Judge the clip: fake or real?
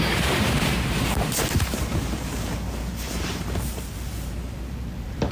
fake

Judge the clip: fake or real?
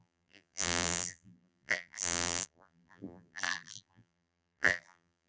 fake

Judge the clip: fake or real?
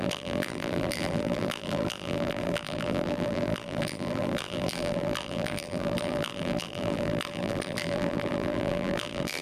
fake